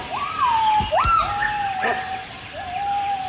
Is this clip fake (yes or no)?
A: no